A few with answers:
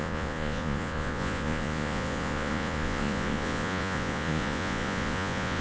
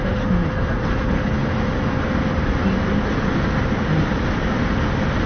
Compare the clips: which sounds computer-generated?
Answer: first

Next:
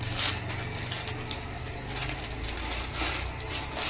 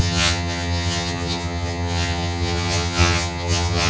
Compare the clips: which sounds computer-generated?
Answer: second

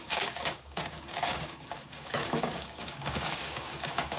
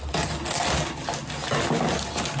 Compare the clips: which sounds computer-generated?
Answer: first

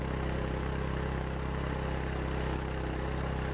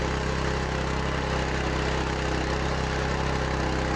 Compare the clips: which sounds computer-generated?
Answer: first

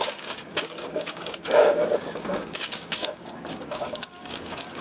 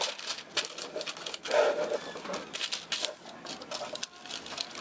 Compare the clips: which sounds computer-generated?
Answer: first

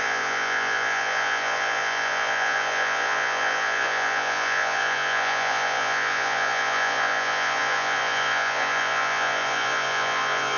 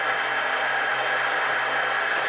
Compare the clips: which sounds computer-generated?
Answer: first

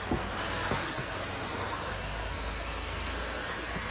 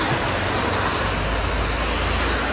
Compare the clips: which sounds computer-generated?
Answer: first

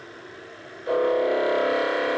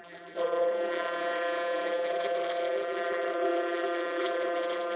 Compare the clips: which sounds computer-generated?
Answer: second